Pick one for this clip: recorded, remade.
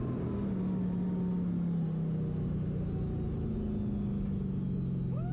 recorded